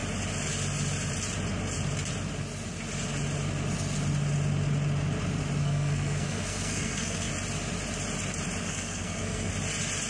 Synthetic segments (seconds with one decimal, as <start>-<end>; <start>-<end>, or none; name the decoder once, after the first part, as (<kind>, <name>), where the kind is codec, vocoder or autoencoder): 5.6-7.3 (codec, SNAC); 8.6-9.5